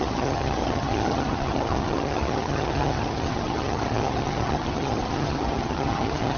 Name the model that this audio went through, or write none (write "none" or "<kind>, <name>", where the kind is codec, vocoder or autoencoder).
vocoder, HiFi-GAN